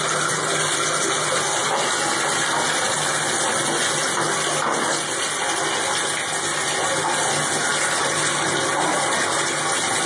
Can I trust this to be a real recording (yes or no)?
yes